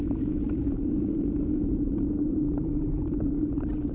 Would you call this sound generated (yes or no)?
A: yes